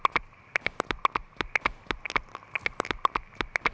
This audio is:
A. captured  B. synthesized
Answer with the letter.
A